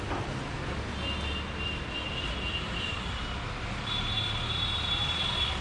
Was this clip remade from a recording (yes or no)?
no